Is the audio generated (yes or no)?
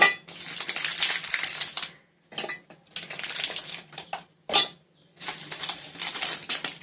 no